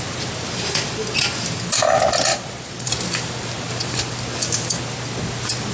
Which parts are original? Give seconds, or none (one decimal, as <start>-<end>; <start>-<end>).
0.0-2.3; 2.9-5.7